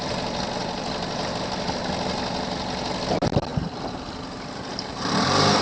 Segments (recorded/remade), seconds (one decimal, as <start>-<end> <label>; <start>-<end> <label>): 0.0-5.6 recorded